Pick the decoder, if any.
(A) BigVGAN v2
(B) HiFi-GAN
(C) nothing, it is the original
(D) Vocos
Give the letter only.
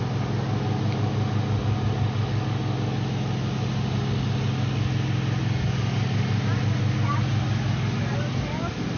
C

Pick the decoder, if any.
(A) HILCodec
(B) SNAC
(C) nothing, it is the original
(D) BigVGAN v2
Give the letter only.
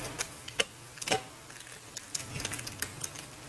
C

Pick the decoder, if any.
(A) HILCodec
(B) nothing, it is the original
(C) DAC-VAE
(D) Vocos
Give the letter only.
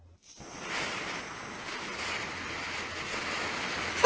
B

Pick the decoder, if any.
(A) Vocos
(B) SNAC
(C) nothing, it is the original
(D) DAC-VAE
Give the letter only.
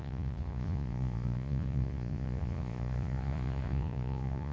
A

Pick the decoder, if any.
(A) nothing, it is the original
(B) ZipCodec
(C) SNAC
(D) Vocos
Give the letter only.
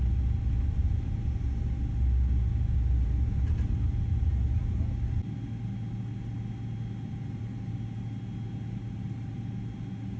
A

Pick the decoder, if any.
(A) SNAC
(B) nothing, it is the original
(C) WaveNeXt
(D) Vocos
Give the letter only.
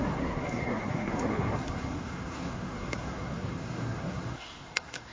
A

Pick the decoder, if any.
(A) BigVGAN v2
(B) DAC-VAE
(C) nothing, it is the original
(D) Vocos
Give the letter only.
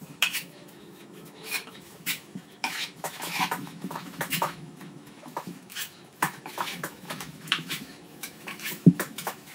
B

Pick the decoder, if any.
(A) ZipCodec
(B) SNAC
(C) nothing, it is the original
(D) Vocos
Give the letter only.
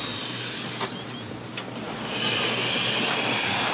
C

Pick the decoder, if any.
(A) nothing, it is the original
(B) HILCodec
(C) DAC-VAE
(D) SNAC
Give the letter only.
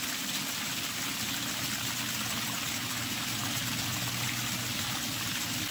A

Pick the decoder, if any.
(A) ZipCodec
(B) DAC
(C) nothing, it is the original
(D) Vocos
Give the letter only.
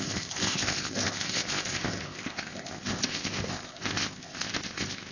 A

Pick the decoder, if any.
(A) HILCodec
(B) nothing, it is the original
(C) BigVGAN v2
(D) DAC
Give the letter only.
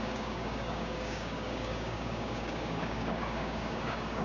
D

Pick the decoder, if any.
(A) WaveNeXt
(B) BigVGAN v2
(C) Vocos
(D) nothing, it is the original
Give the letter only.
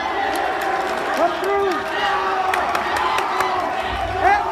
D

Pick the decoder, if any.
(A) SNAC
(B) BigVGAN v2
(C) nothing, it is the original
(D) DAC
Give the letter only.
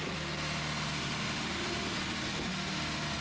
C